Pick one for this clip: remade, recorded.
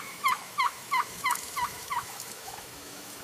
remade